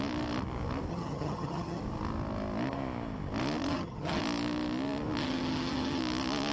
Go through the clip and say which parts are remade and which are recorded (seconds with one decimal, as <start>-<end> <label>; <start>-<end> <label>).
0.0-0.9 recorded; 0.9-1.8 remade; 1.8-3.7 recorded; 3.7-4.2 remade; 4.2-5.2 recorded; 5.2-6.0 remade; 6.0-6.5 recorded